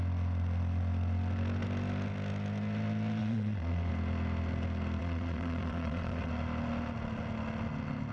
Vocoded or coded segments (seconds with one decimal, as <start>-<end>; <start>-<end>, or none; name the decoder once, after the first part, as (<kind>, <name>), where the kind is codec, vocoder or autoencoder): 3.2-3.9 (vocoder, WaveNeXt); 5.0-6.3